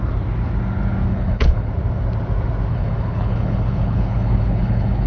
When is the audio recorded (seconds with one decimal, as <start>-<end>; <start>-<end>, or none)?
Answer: 0.0-1.1; 1.7-2.7